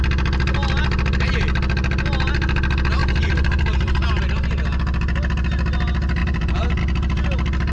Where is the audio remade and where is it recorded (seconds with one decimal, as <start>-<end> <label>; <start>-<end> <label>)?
0.0-3.0 recorded; 3.0-4.2 remade; 4.2-6.2 recorded; 6.2-6.8 remade; 6.8-7.7 recorded